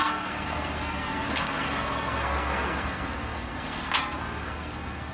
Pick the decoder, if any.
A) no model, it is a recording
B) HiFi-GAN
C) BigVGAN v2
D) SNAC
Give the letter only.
D